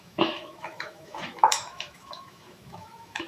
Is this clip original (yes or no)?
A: no